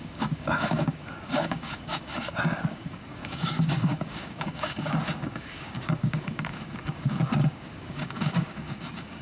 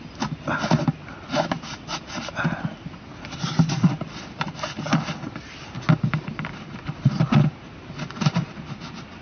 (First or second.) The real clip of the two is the second